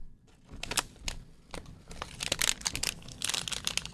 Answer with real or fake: real